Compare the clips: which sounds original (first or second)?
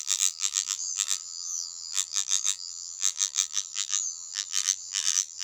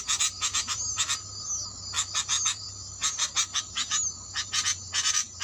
second